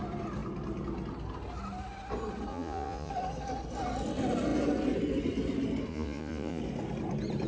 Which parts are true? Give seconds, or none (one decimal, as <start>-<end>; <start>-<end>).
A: 0.0-2.5; 3.1-5.9; 6.6-7.5